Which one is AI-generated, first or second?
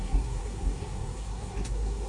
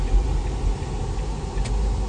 first